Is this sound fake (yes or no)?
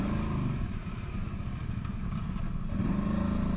no